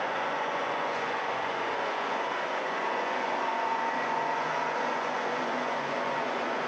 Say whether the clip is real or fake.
fake